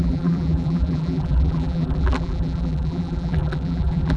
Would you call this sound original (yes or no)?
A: no